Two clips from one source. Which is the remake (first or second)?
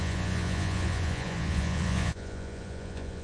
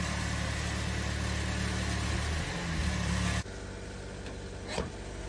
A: first